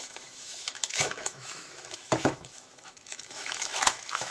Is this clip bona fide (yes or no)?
no